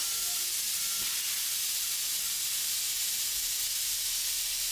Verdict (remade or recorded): recorded